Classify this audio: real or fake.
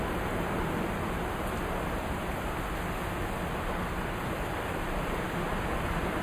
real